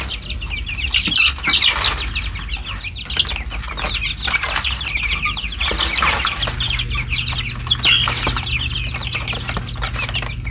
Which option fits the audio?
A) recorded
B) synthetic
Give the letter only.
A